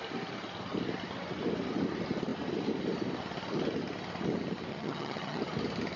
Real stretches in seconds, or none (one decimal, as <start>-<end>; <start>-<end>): 0.0-4.7; 5.4-6.0